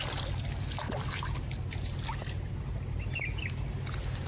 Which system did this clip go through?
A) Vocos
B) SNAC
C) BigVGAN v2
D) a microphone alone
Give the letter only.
D